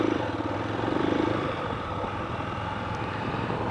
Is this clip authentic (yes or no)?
no